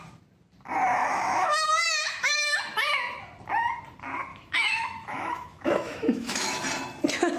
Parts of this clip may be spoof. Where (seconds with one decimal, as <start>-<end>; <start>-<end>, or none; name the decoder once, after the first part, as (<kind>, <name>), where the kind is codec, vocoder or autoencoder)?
1.0-2.6 (autoencoder, DAC-VAE); 4.3-6.6